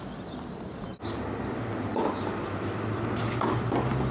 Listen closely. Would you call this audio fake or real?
real